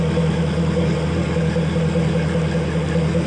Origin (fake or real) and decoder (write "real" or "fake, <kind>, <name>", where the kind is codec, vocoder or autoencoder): real